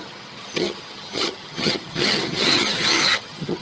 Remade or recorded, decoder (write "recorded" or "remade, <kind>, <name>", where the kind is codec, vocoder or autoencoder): remade, vocoder, HiFi-GAN